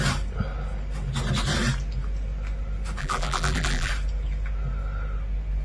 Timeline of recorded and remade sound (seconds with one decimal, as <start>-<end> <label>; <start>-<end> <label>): 0.0-3.0 recorded; 3.0-3.9 remade; 3.9-5.6 recorded